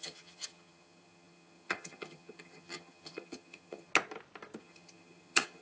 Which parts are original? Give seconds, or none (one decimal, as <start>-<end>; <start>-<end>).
3.9-4.6